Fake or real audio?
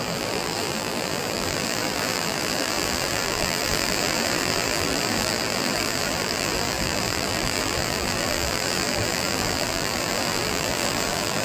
fake